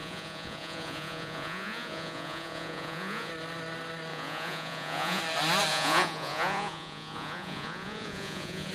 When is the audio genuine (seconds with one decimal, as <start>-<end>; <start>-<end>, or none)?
3.3-4.1; 5.2-5.7